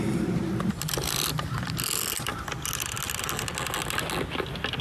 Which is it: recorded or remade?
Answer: recorded